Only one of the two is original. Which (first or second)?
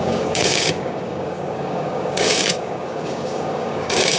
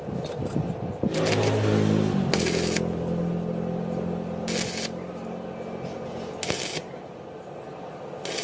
second